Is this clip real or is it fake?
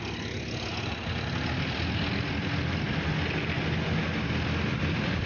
real